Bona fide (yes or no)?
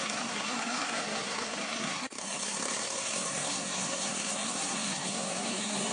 no